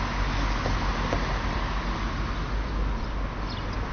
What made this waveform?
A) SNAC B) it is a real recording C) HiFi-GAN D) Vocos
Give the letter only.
B